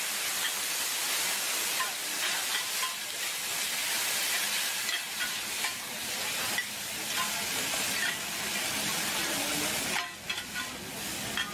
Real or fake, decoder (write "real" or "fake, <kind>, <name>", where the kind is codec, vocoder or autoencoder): real